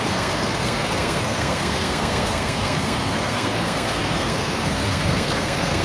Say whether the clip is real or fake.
fake